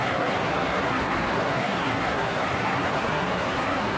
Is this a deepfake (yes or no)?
yes